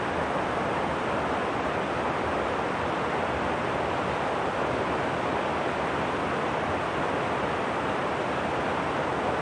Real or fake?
real